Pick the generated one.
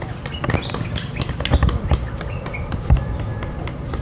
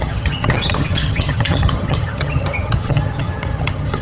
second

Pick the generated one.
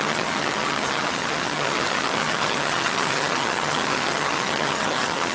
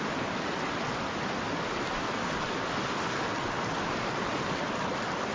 first